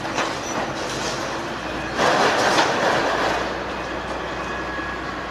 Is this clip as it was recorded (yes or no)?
yes